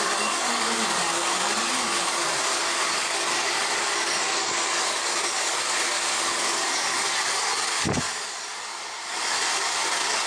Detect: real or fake fake